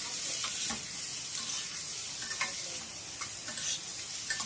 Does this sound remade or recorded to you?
recorded